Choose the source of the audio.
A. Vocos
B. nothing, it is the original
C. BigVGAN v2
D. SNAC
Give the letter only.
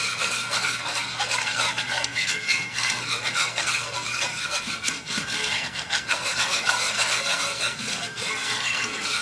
D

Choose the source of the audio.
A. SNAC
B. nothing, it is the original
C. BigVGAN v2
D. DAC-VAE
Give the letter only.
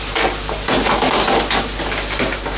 B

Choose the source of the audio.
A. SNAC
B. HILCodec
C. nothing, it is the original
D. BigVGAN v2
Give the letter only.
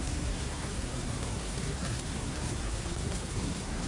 A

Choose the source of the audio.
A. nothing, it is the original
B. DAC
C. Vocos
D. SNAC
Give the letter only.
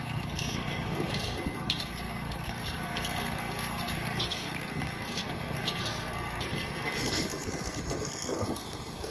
D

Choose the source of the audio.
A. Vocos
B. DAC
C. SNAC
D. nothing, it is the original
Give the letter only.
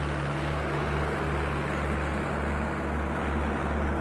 D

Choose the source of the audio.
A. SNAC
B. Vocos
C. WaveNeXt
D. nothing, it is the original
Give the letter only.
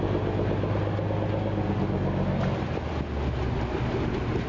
D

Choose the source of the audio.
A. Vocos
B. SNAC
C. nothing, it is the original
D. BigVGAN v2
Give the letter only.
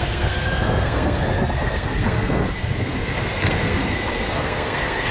B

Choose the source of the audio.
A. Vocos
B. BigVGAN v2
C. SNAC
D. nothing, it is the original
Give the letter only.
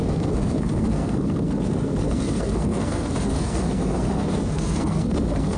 C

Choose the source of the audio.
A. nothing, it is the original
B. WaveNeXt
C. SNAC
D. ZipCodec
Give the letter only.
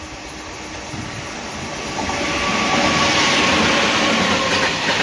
A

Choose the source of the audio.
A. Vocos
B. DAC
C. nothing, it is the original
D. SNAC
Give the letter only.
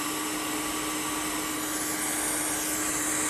C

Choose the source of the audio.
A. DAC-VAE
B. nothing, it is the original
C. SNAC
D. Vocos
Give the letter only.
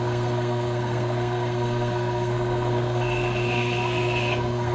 C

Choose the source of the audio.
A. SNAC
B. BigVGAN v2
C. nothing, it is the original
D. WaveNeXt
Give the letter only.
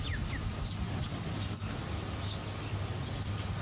C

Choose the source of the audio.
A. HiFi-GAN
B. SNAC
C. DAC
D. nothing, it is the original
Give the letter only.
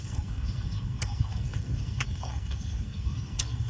B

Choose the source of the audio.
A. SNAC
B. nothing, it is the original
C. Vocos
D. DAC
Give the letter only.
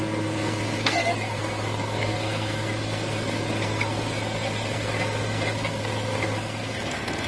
A